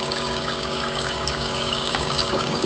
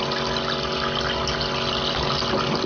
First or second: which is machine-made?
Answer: first